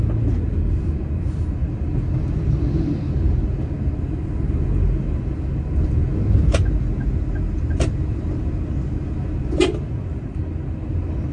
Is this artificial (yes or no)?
no